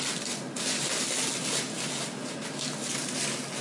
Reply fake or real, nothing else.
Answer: real